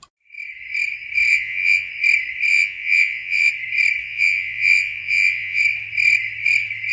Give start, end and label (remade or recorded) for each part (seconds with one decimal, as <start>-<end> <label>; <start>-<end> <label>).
0.0-1.3 recorded; 1.3-1.9 remade; 1.9-2.5 recorded; 2.5-3.5 remade; 3.5-4.0 recorded; 4.0-5.6 remade; 5.6-6.9 recorded